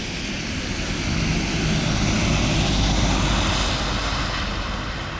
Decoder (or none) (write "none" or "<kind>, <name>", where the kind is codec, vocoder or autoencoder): none